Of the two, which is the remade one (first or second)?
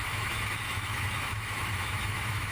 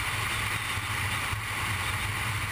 first